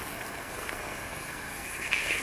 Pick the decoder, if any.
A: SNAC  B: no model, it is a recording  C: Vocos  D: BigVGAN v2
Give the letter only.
A